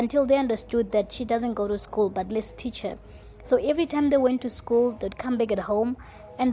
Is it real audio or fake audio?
real